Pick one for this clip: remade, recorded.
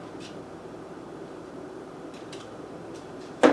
remade